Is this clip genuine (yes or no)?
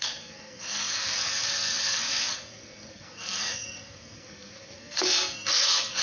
no